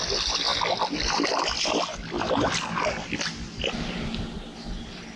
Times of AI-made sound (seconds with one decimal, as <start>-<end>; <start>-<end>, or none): none